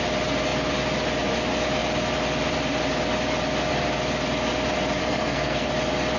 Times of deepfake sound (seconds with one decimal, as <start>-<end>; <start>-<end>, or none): 5.0-5.7